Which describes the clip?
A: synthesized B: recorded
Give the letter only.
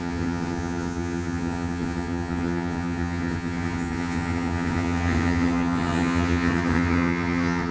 A